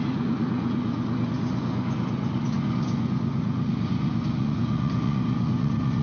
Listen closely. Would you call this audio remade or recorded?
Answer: remade